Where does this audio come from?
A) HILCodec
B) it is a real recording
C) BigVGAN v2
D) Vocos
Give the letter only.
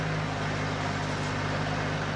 B